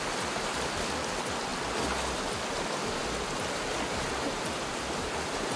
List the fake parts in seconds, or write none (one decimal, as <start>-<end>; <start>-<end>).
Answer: none